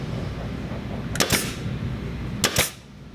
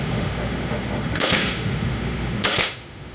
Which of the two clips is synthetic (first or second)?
second